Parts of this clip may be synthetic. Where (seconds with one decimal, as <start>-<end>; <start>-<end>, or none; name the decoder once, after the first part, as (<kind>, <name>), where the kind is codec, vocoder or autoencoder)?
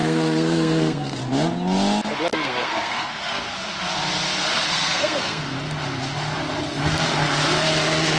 0.0-1.2 (codec, SNAC); 2.3-3.4; 4.7-5.5